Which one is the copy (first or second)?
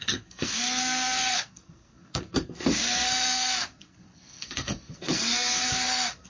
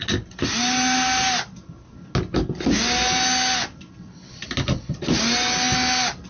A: first